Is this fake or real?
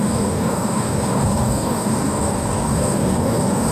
fake